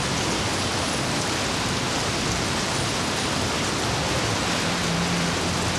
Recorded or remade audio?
recorded